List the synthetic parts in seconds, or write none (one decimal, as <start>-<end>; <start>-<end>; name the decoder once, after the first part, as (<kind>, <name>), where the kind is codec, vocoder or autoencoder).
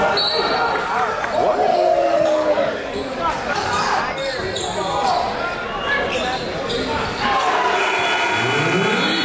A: 1.7-4.0 (codec, DAC)